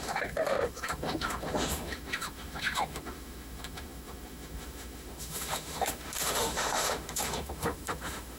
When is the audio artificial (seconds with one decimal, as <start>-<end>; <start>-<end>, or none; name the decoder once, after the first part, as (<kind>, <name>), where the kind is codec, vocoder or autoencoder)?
0.0-8.4 (autoencoder, DAC-VAE)

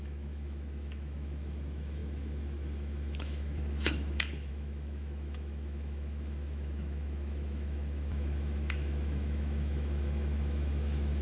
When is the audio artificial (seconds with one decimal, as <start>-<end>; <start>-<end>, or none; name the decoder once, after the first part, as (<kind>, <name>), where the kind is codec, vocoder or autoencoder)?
0.0-11.2 (autoencoder, DAC-VAE)

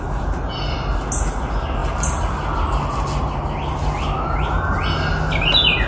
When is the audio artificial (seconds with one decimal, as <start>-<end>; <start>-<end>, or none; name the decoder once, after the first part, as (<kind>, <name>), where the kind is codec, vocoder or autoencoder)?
none

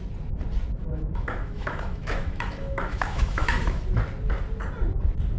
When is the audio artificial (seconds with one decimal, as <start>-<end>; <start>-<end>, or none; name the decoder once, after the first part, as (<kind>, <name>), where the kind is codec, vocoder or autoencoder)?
0.8-3.8 (autoencoder, DAC-VAE)

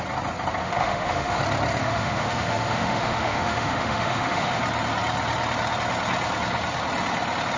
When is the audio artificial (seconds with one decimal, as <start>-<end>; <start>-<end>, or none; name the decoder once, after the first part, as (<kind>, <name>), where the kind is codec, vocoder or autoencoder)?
0.6-1.4 (autoencoder, DAC-VAE); 1.8-4.6

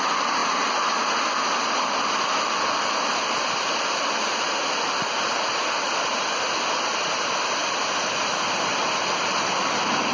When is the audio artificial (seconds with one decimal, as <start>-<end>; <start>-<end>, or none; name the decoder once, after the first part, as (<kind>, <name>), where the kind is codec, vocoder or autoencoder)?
none